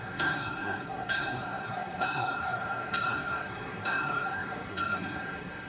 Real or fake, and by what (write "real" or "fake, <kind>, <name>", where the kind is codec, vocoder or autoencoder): fake, codec, SNAC